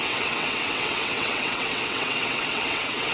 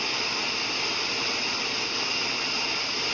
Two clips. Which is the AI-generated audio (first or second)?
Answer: first